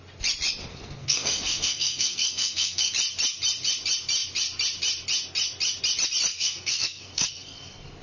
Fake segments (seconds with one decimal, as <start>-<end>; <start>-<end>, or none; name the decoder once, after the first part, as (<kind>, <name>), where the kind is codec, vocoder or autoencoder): 0.7-2.9 (codec, SNAC); 6.3-8.0